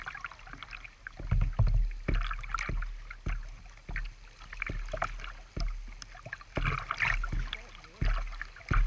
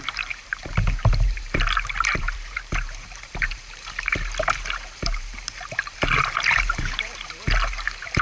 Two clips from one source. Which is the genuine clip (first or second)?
first